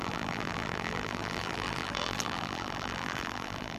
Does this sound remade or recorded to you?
remade